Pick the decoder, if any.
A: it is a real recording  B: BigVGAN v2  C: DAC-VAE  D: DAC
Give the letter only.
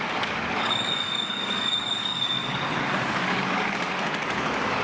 D